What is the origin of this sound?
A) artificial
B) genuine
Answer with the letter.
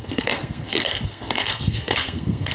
A